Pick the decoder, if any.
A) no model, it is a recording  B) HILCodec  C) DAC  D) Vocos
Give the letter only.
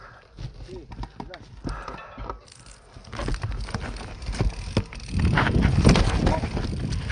A